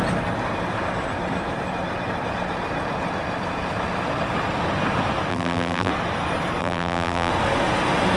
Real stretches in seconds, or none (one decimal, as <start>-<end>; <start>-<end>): 0.0-5.3; 5.9-6.6; 7.3-8.2